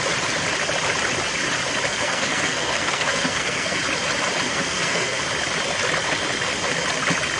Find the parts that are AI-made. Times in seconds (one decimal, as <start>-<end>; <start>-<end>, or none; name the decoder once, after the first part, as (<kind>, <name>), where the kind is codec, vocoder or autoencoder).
1.9-3.8 (codec, SNAC); 4.5-5.2